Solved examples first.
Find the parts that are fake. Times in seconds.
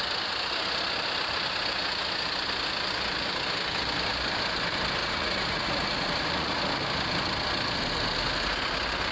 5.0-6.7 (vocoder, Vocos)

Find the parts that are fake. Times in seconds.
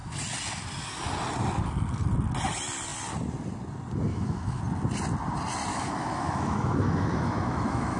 4.1-4.6 (autoencoder, DAC-VAE); 5.7-8.0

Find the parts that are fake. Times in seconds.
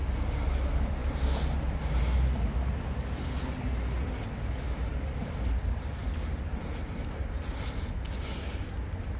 none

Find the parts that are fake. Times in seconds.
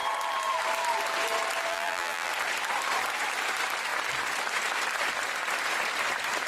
1.7-2.3 (vocoder, BigVGAN v2)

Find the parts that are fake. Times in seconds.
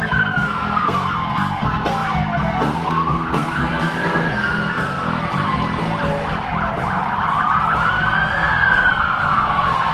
0.0-5.2 (codec, SNAC); 7.9-9.9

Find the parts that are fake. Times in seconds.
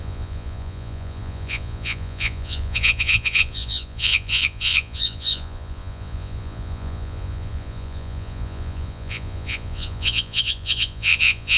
0.0-11.6 (vocoder, Vocos)